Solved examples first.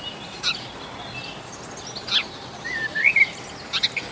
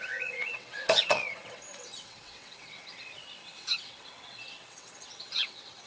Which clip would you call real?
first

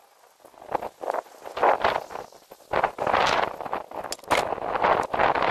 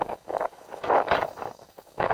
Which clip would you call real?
first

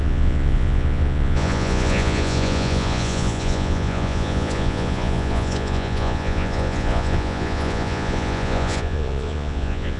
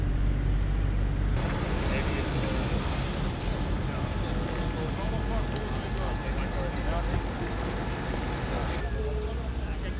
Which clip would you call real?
second